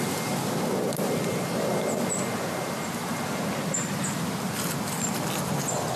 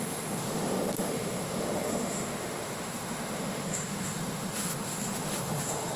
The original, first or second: first